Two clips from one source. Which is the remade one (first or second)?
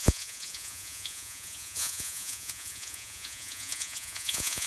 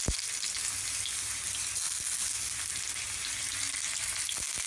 first